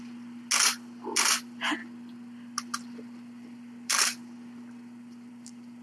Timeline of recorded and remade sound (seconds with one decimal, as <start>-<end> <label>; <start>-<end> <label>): 0.0-5.8 recorded